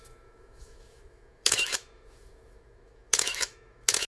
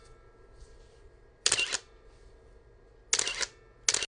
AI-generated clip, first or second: first